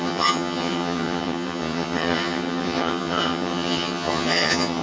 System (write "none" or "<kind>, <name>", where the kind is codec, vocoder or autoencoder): vocoder, HiFi-GAN